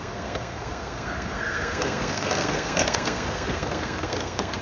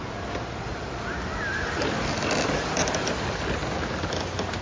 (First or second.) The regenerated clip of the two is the first